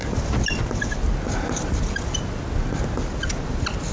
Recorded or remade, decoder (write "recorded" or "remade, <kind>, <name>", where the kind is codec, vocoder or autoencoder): recorded